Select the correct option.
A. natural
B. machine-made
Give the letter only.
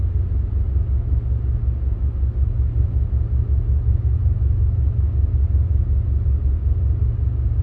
A